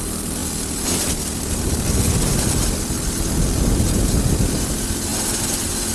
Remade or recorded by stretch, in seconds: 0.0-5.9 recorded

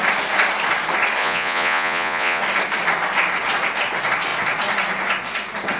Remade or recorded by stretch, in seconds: 0.0-1.2 recorded; 1.2-2.4 remade; 2.4-5.8 recorded

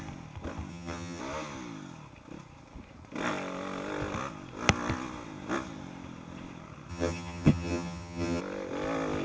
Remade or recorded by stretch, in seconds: 0.0-0.7 recorded; 0.7-1.2 remade; 1.2-6.9 recorded; 6.9-8.4 remade; 8.4-9.2 recorded

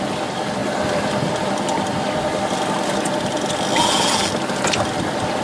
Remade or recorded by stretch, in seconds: 0.0-5.4 recorded